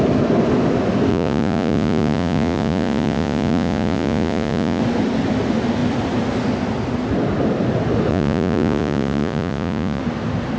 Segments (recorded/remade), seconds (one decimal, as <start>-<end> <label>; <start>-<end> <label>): 0.0-1.1 recorded; 1.1-4.8 remade; 4.8-8.1 recorded; 8.1-10.0 remade; 10.0-10.6 recorded